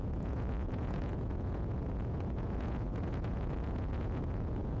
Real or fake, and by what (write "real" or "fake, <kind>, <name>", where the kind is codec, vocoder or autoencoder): fake, vocoder, Vocos